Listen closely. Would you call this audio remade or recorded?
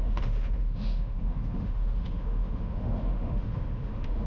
remade